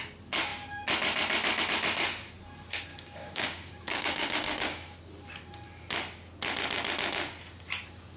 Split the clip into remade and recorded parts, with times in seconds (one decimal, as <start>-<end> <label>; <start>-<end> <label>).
0.0-2.9 recorded; 2.9-5.0 remade; 5.0-8.2 recorded